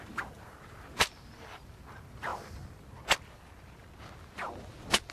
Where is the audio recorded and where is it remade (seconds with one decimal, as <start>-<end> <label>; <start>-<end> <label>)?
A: 0.0-5.1 recorded